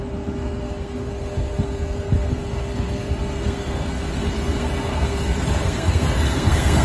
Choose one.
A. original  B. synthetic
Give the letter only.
B